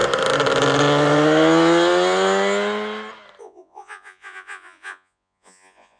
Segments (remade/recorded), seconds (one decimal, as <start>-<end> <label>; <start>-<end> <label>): 0.0-3.4 recorded; 3.4-6.0 remade

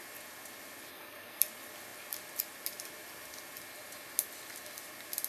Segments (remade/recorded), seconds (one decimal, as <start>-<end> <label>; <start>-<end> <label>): 0.0-0.9 recorded; 0.9-1.4 remade; 1.4-5.3 recorded

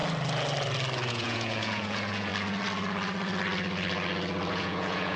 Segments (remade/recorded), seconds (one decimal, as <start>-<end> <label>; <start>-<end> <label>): 0.0-1.1 recorded; 1.1-2.3 remade; 2.3-4.5 recorded; 4.5-5.2 remade

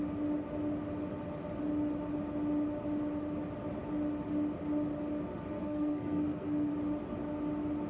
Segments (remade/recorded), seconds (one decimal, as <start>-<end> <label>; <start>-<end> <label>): 0.0-5.5 recorded; 5.5-6.7 remade; 6.7-7.9 recorded